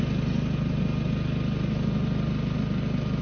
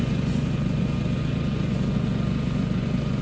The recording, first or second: first